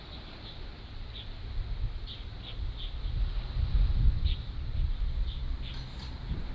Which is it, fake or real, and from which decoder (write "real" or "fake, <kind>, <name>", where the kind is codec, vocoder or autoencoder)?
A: real